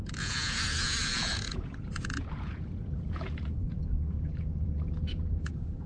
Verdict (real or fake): fake